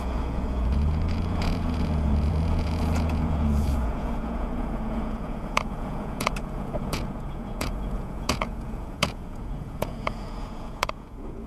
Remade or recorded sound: remade